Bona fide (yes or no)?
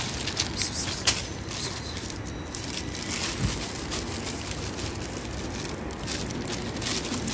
yes